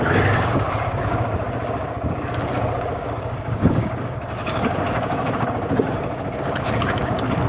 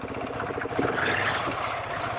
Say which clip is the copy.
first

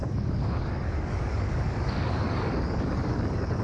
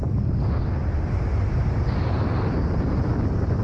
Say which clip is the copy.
first